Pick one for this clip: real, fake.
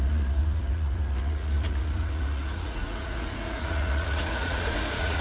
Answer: fake